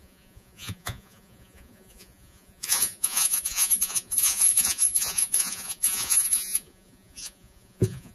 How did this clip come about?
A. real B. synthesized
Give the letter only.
B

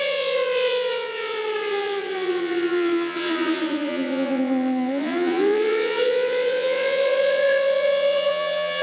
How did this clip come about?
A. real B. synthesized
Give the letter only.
B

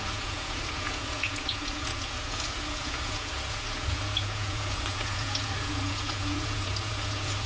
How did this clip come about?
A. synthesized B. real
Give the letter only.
A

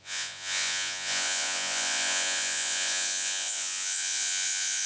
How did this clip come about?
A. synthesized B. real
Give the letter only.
A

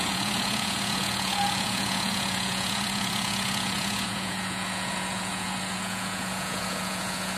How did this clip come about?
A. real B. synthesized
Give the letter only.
B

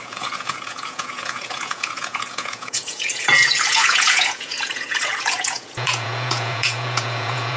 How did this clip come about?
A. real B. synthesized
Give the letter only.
B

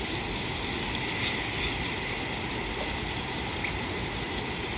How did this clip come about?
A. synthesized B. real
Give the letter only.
B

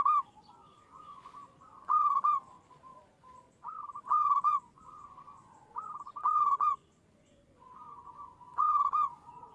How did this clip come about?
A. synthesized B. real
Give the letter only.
A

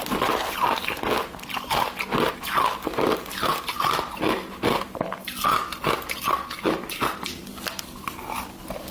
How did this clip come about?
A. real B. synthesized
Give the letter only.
A